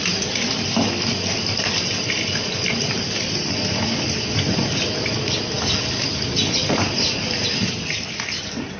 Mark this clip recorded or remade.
recorded